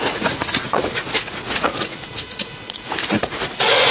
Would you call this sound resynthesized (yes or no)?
yes